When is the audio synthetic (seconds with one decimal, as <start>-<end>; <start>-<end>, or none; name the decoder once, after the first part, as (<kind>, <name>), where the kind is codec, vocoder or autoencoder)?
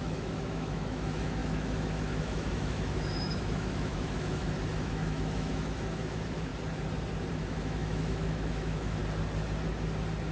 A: 0.0-6.5 (autoencoder, DAC-VAE); 7.3-9.0